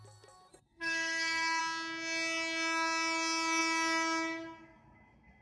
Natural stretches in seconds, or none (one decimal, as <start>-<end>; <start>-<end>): 0.0-0.5; 1.6-5.4